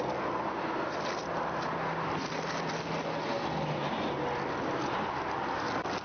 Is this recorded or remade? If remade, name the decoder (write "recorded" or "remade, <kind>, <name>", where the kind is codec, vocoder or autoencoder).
recorded